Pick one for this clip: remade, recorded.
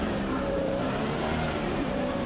remade